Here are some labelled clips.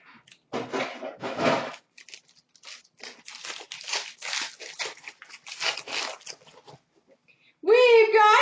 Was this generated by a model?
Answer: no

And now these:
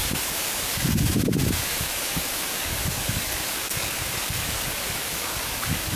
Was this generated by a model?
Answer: yes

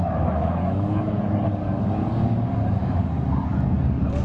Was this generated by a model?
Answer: yes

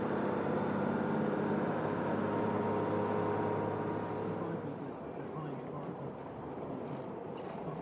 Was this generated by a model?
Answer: no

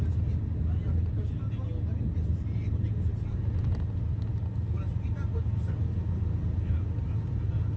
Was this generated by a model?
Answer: no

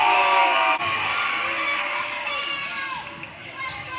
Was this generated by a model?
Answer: yes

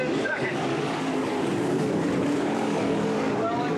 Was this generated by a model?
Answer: yes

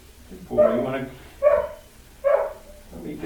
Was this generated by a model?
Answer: no